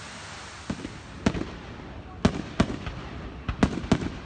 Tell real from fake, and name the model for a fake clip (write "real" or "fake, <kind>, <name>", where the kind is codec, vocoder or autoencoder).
real